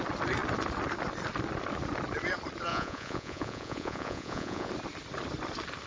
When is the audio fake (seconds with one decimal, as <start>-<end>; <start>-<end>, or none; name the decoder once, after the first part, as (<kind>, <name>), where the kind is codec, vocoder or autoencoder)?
2.7-4.7 (vocoder, Vocos)